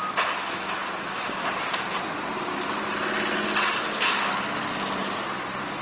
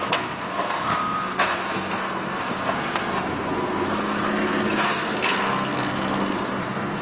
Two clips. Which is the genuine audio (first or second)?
first